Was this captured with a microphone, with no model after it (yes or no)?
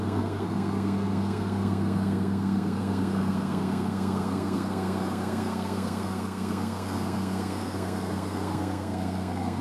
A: no